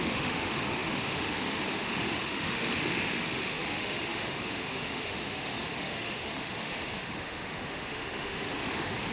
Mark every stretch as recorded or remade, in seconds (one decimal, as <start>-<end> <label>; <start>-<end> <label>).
0.0-9.1 remade